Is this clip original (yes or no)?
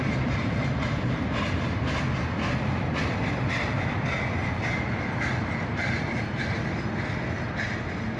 yes